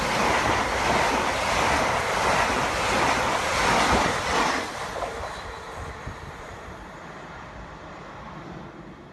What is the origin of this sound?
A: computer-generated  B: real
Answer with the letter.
A